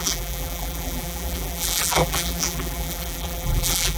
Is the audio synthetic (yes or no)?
yes